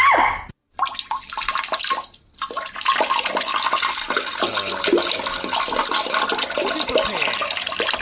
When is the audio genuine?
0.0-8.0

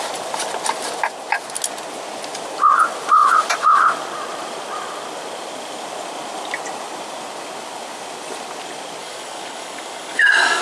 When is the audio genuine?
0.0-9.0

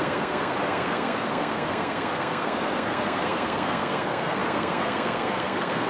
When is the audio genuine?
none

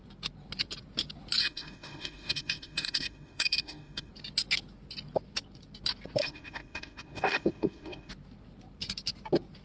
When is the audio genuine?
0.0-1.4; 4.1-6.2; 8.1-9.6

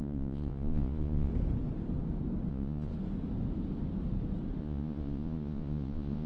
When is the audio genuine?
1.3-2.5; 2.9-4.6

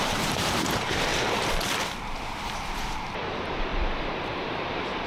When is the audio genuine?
none

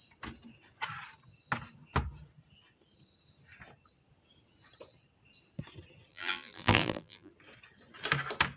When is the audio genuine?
0.0-6.1; 7.3-8.6

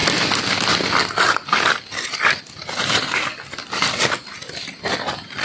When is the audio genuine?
0.0-5.4